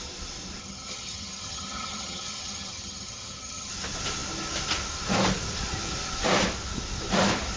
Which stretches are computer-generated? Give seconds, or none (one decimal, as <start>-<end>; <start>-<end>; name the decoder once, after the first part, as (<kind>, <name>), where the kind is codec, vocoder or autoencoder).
0.6-3.7 (vocoder, HiFi-GAN)